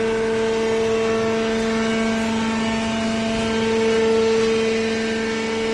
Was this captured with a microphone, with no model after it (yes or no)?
yes